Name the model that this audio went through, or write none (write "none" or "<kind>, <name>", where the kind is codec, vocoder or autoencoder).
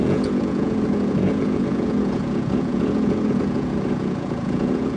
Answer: vocoder, Vocos